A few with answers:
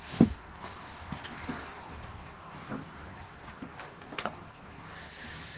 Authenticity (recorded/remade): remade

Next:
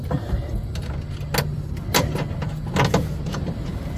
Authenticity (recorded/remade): recorded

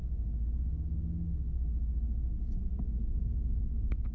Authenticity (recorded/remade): recorded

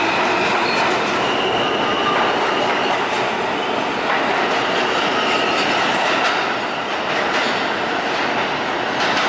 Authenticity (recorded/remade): recorded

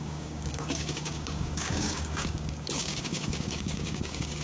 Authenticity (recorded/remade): remade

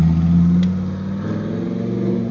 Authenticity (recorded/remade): recorded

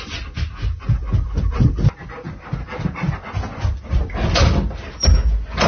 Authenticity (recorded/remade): recorded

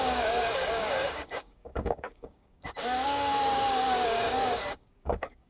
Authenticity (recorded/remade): remade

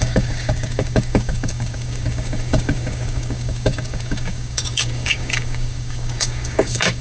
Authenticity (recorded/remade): remade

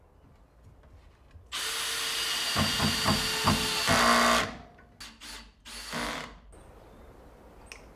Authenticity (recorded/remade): recorded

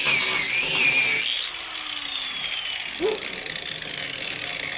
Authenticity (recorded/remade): recorded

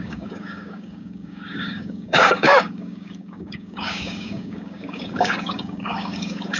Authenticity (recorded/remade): remade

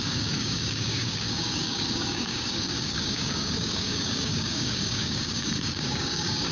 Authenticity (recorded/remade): remade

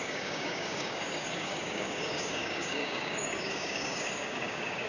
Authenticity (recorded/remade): remade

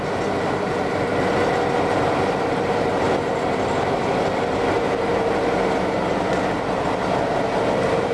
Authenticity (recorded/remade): recorded